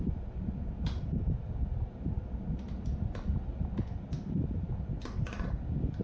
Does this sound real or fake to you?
real